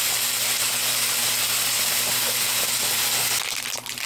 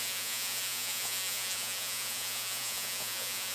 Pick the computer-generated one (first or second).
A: second